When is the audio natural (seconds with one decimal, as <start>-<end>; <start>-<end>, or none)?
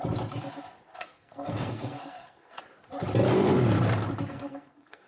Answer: 0.0-0.9; 2.6-4.3